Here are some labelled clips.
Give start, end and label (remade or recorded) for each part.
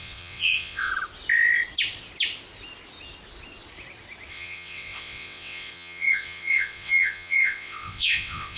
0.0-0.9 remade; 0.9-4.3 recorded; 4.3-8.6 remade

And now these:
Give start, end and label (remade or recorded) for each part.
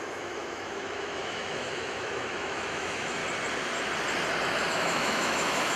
0.0-3.2 remade; 3.2-4.7 recorded; 4.7-5.8 remade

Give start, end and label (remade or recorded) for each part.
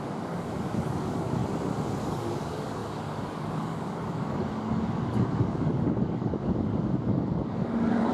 0.0-1.4 remade; 1.4-2.0 recorded; 2.0-8.1 remade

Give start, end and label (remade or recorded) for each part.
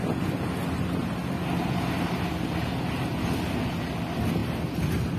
0.0-5.2 recorded